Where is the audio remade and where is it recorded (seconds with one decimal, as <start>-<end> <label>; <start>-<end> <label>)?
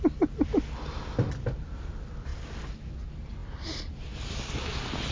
0.0-5.1 recorded